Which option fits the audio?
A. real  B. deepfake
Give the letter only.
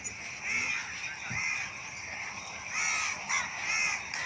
A